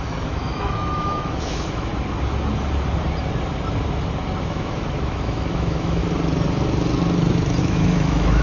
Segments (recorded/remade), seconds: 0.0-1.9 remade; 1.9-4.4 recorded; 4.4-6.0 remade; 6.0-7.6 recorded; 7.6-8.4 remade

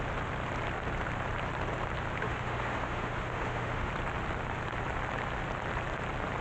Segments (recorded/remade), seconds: 0.0-2.2 recorded; 2.2-3.9 remade; 3.9-6.4 recorded

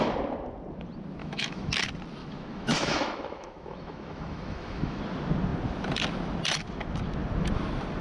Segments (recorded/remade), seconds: 0.0-1.2 recorded; 1.2-1.7 remade; 1.7-2.2 recorded; 2.2-5.0 remade; 5.0-8.0 recorded

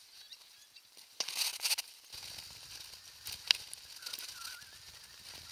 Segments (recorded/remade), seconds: 0.0-5.5 recorded

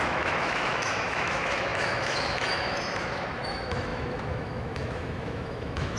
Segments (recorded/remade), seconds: 0.0-6.0 remade

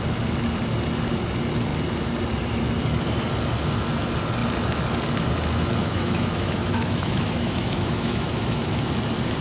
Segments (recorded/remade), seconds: 0.0-5.8 recorded; 5.8-8.7 remade; 8.7-9.4 recorded

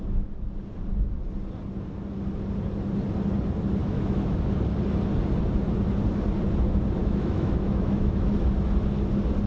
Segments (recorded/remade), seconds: 0.0-3.8 recorded; 3.8-4.6 remade; 4.6-7.0 recorded; 7.0-8.3 remade; 8.3-9.5 recorded